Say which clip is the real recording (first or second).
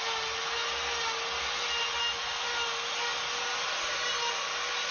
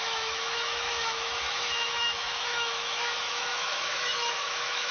first